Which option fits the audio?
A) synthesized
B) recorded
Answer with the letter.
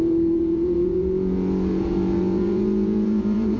A